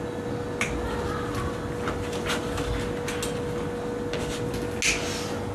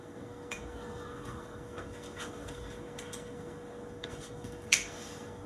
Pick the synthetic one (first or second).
second